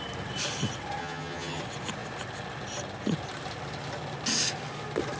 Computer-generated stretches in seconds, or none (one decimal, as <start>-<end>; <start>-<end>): 1.0-1.6